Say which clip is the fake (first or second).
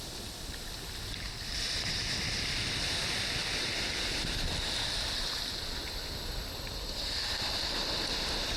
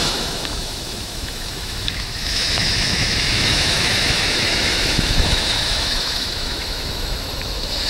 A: second